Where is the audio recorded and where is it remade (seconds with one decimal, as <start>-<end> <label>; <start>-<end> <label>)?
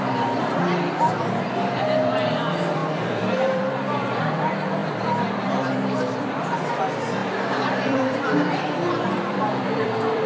0.0-7.2 remade; 7.2-7.7 recorded; 7.7-10.3 remade